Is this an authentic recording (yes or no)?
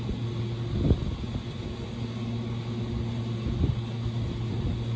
yes